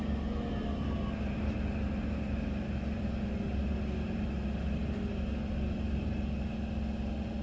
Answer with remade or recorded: recorded